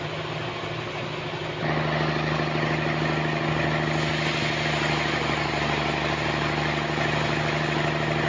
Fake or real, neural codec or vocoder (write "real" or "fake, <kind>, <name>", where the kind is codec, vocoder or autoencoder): real